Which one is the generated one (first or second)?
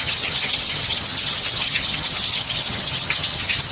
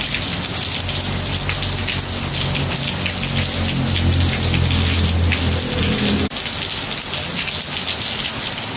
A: first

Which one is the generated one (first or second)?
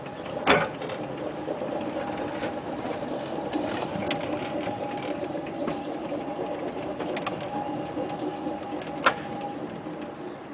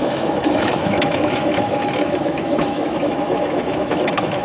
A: second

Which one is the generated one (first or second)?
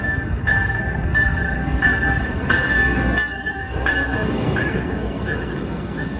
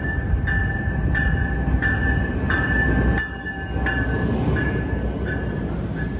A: first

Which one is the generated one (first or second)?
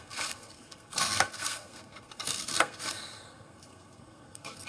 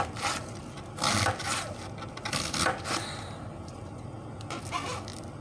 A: first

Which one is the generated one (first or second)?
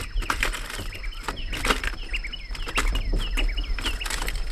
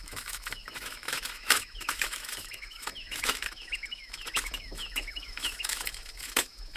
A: second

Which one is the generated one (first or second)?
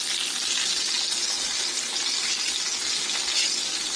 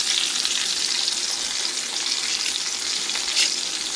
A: second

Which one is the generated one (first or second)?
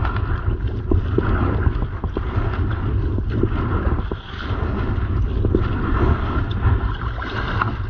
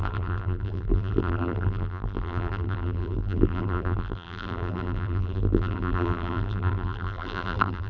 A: second